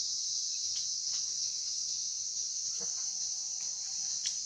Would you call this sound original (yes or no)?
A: yes